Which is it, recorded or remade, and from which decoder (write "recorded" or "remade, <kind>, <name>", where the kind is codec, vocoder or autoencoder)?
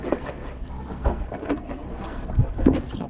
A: remade, codec, SNAC